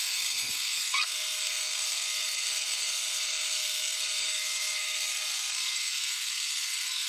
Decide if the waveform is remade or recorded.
remade